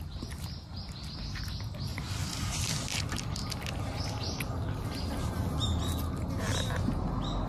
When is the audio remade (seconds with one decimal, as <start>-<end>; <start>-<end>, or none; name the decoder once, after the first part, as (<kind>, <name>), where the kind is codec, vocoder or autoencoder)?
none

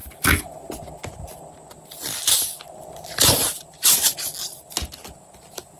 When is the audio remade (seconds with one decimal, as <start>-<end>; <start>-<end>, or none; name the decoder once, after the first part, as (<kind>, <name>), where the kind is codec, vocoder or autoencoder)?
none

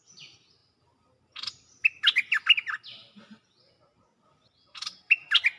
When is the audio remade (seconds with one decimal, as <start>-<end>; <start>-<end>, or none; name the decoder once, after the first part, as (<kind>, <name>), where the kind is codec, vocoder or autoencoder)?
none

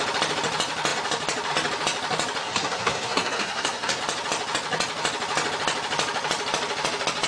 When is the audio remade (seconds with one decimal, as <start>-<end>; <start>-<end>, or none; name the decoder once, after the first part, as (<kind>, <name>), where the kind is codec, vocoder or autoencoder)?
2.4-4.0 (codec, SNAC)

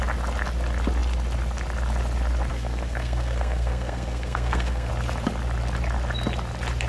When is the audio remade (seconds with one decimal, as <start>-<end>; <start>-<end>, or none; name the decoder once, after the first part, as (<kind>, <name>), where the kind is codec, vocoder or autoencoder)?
2.5-4.9 (codec, SNAC)

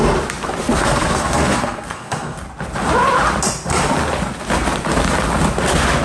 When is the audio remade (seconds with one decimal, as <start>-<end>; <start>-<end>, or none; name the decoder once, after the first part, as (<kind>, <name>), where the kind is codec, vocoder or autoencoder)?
0.6-2.4 (codec, SNAC)